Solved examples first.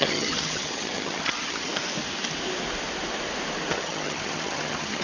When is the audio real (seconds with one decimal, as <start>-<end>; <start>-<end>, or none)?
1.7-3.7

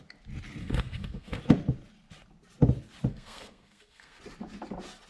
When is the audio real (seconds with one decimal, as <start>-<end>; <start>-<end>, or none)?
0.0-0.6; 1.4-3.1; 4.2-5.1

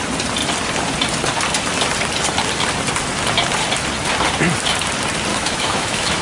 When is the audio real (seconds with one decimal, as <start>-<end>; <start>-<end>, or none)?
0.0-5.3